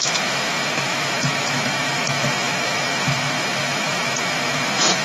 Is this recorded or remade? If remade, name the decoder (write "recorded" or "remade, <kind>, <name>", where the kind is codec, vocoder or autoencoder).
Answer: remade, autoencoder, DAC-VAE